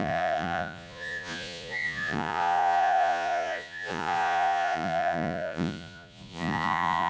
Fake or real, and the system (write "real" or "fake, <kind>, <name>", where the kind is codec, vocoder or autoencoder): fake, vocoder, Vocos